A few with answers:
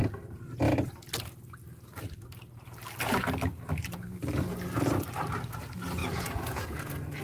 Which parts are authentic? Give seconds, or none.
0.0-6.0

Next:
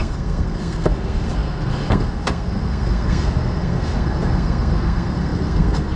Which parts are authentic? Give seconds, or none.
none

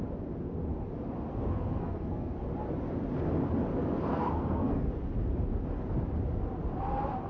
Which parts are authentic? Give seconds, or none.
0.0-1.3; 2.4-4.1; 4.9-7.3

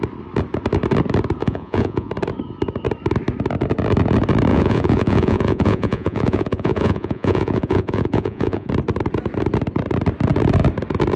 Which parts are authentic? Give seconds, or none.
0.0-1.4; 2.1-4.5; 8.7-11.2

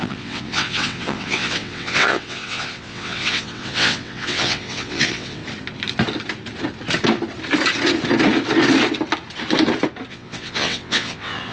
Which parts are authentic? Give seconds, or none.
5.4-10.1

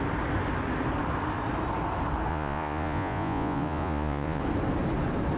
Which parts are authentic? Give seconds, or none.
0.0-2.3; 4.4-5.4